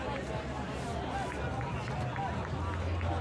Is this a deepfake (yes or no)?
no